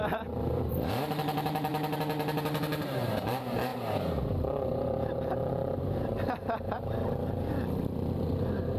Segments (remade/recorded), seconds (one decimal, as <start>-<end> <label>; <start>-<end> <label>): 0.0-1.7 remade; 1.7-2.6 recorded; 2.6-8.8 remade